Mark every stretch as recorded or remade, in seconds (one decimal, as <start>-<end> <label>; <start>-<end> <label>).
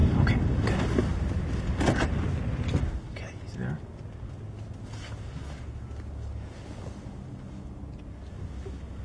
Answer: 0.0-9.0 recorded